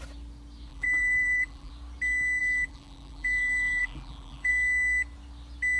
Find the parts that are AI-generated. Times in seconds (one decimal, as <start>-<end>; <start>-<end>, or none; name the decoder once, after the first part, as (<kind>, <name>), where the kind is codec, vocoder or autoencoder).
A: 0.7-1.7 (vocoder, BigVGAN v2); 2.4-4.5